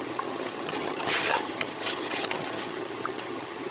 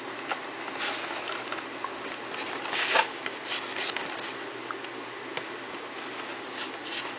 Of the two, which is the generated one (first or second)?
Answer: first